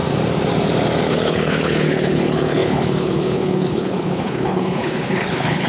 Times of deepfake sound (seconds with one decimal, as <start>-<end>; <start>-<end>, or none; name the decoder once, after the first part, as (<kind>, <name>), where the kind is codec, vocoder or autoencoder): 1.1-5.7 (codec, HILCodec)

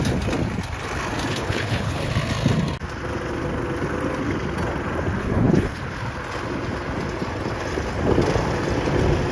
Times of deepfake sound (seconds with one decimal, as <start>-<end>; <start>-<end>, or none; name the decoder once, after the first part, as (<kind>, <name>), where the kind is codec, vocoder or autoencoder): 1.3-2.1 (codec, HILCodec); 5.2-5.8

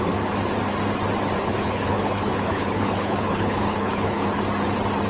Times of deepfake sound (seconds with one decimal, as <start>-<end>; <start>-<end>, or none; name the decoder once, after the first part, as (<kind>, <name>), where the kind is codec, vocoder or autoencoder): 1.4-4.4 (codec, HILCodec)

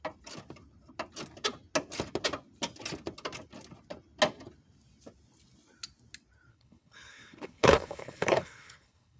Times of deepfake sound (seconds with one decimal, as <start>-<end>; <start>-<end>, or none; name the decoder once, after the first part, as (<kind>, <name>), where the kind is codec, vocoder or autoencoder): 6.5-9.2 (codec, HILCodec)

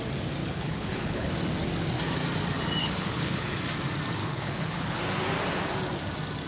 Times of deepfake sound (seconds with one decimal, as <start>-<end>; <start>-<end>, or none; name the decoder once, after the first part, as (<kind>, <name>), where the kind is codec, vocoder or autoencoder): 0.4-1.3 (codec, HILCodec); 2.8-3.5; 4.2-5.0

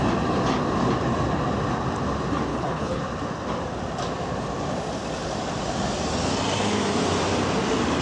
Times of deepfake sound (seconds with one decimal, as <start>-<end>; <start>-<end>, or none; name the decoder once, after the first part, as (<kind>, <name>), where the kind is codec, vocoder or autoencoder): 2.5-3.0 (codec, HILCodec)

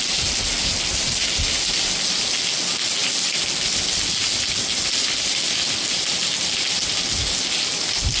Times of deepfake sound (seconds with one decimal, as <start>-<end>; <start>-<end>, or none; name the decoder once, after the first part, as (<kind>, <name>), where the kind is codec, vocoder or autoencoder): none